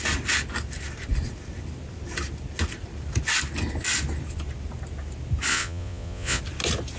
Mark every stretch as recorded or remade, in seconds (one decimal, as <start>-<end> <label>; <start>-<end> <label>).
0.0-5.5 recorded; 5.5-6.4 remade; 6.4-7.0 recorded